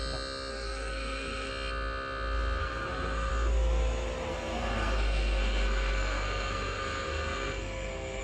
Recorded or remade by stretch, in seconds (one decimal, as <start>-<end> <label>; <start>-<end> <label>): 0.0-0.5 recorded; 0.5-1.5 remade; 1.5-2.6 recorded; 2.6-3.3 remade; 3.3-4.3 recorded; 4.3-8.2 remade